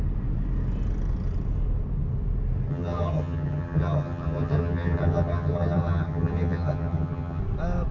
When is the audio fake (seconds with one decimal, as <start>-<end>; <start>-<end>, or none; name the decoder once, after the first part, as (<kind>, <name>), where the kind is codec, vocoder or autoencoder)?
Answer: 2.7-7.4 (vocoder, HiFi-GAN)

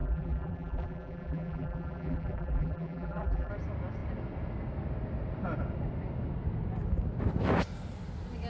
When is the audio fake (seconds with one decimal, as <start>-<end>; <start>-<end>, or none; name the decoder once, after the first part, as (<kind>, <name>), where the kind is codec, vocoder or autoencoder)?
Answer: 0.0-3.5 (vocoder, BigVGAN v2)

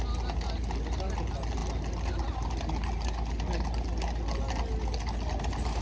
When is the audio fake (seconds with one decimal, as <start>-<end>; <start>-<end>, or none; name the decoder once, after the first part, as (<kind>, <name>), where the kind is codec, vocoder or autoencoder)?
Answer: none

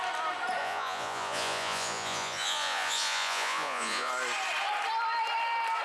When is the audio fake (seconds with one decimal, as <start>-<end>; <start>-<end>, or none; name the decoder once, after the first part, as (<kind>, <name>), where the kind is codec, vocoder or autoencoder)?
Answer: 0.6-4.1 (vocoder, Vocos)